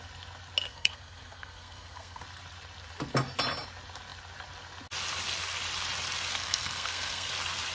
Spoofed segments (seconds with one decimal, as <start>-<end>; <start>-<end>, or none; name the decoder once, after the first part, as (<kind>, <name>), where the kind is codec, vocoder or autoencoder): 0.7-2.2 (codec, SNAC); 6.3-7.3